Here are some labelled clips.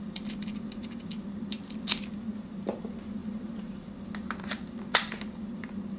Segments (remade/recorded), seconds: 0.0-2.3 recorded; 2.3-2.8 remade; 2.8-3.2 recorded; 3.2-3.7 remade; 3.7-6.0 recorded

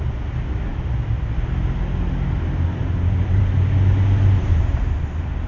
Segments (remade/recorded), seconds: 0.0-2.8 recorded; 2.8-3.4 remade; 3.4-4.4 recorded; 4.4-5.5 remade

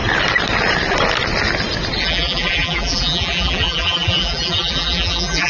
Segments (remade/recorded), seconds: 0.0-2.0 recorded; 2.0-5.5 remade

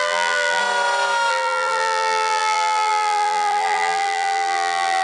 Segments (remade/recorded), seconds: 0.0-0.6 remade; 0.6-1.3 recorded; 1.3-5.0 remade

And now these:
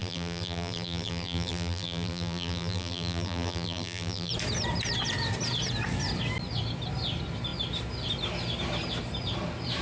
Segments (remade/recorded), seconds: 0.0-4.3 remade; 4.3-9.8 recorded

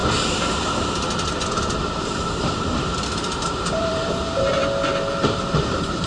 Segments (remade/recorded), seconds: 0.0-1.8 recorded; 1.8-4.6 remade; 4.6-5.1 recorded; 5.1-6.1 remade